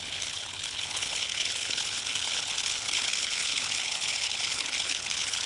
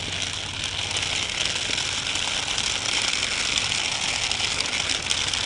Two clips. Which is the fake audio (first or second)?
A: first